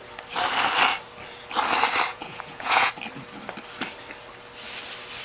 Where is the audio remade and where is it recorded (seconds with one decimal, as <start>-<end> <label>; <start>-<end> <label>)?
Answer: 0.0-2.1 recorded; 2.1-2.9 remade; 2.9-5.2 recorded